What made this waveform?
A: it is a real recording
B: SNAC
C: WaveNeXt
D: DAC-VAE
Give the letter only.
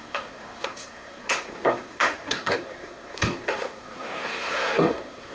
B